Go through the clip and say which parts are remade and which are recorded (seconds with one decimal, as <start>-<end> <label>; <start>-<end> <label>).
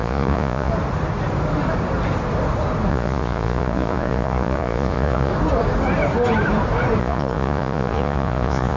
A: 0.0-0.7 remade; 0.7-2.9 recorded; 2.9-5.3 remade; 5.3-7.0 recorded; 7.0-8.8 remade